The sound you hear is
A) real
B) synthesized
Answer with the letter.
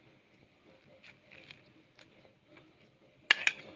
A